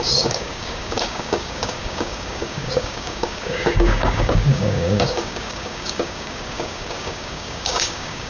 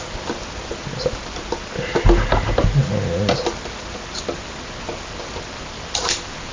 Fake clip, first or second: first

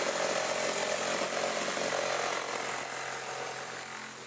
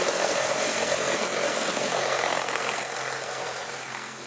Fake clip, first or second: second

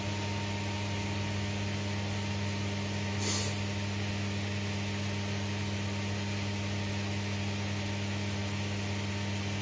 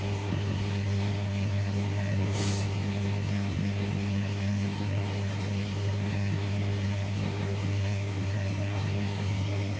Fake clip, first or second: second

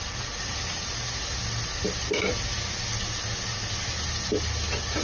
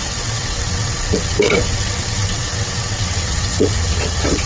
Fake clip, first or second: second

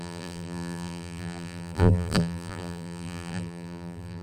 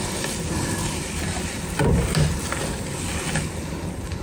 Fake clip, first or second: first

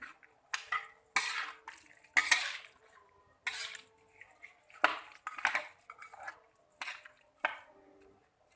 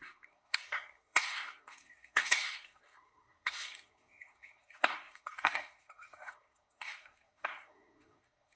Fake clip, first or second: second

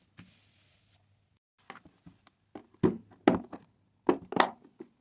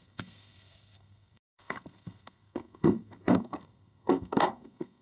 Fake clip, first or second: second